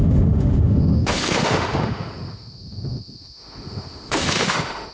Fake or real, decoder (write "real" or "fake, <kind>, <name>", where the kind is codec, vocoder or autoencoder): fake, autoencoder, DAC-VAE